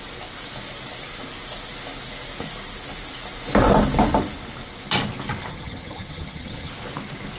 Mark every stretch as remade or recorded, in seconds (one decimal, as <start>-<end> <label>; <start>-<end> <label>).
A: 0.0-5.5 recorded; 5.5-6.7 remade; 6.7-7.4 recorded